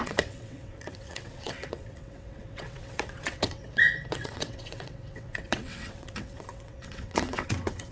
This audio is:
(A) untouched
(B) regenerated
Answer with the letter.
B